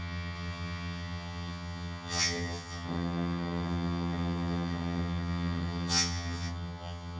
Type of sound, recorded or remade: remade